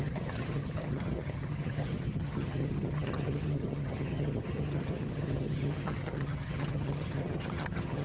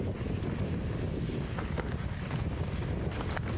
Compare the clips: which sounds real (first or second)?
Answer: second